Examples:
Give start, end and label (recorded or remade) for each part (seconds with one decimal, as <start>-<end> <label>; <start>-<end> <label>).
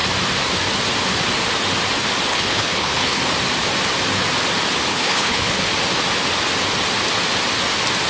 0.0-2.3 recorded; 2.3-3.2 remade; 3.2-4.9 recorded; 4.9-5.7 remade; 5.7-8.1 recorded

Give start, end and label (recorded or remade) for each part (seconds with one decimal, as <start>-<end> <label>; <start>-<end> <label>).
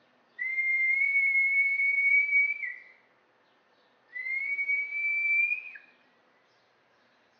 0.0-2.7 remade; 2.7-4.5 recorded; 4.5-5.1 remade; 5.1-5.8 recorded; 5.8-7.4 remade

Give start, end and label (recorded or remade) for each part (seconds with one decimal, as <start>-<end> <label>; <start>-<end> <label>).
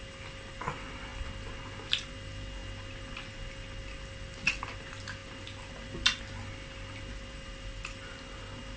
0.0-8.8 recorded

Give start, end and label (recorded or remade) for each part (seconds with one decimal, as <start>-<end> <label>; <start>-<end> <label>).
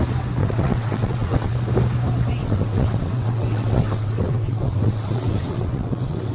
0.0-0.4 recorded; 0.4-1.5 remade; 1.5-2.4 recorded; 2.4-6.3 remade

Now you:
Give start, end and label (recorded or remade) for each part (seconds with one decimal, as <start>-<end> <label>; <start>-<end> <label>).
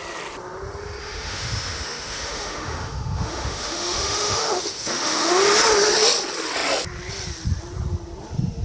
0.0-1.0 recorded; 1.0-5.4 remade; 5.4-8.6 recorded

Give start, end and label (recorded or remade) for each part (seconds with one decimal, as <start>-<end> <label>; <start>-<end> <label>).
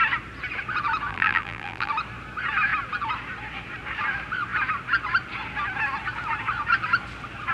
0.0-1.1 recorded; 1.1-1.9 remade; 1.9-7.5 recorded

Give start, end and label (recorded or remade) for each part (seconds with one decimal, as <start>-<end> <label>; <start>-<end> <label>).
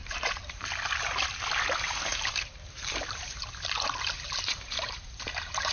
0.0-0.7 remade; 0.7-2.1 recorded; 2.1-5.7 remade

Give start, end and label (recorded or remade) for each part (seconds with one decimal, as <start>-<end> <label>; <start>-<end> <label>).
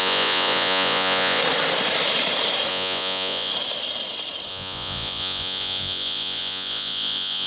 0.0-1.4 remade; 1.4-2.7 recorded; 2.7-3.5 remade; 3.5-4.5 recorded; 4.5-7.5 remade